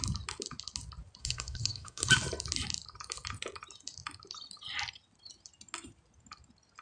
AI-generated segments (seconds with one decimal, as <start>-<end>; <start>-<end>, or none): 1.2-2.1